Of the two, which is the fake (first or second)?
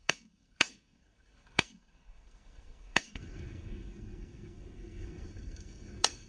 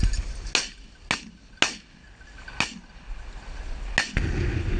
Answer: first